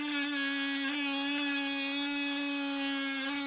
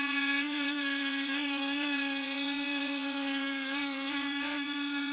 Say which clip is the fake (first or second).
second